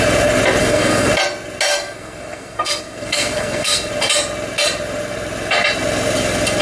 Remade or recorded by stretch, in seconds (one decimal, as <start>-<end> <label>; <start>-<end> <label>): 0.0-0.6 recorded; 0.6-1.1 remade; 1.1-1.7 recorded; 1.7-3.9 remade; 3.9-6.6 recorded